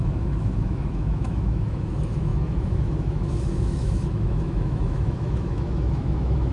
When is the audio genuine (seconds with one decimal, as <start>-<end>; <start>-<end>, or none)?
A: none